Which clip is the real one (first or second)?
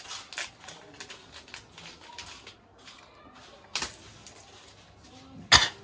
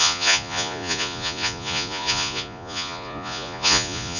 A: first